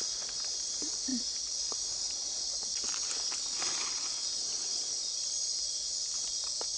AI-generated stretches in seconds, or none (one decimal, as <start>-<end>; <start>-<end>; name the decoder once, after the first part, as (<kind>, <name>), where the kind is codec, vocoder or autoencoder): none